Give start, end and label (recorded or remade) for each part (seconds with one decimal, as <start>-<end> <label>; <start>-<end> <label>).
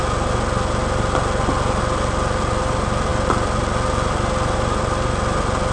0.0-5.7 recorded